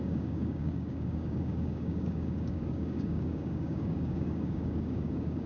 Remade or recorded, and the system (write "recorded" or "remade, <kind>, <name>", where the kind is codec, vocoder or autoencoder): remade, codec, DAC